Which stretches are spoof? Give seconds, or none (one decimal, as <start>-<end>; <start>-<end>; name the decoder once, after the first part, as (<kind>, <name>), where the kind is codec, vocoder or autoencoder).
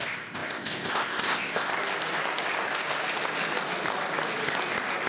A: 0.0-1.7 (codec, ZipCodec)